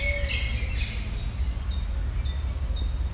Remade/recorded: recorded